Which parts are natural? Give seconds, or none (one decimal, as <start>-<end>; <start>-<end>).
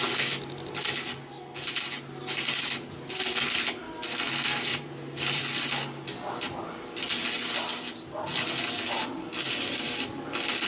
0.0-4.7; 5.4-10.7